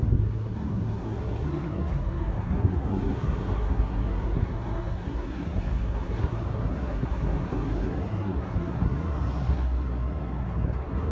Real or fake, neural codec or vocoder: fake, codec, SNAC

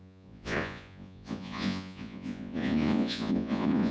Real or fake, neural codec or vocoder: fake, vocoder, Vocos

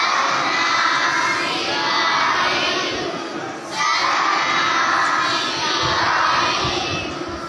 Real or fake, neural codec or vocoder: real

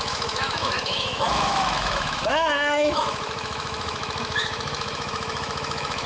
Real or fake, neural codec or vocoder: fake, autoencoder, DAC-VAE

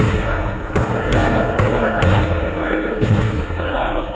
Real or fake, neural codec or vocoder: fake, codec, SNAC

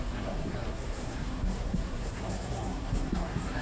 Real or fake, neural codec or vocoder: fake, codec, SNAC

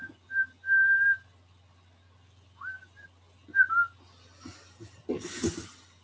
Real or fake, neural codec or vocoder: real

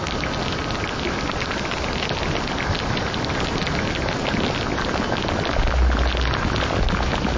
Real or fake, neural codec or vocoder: real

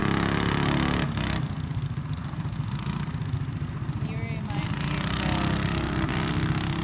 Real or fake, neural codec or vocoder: real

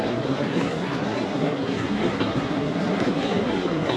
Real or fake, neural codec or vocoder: fake, codec, SNAC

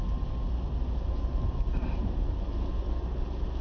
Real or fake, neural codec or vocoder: real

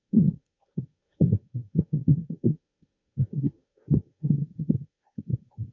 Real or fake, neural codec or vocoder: fake, codec, SNAC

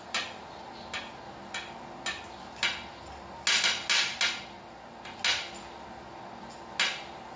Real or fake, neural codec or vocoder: real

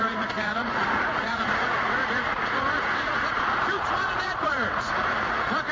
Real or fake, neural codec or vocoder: fake, vocoder, Vocos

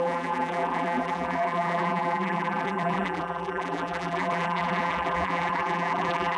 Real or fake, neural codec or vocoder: fake, vocoder, BigVGAN v2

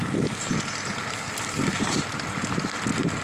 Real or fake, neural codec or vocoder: fake, vocoder, BigVGAN v2